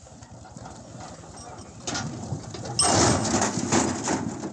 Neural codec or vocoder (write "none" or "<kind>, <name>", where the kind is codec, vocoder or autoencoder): none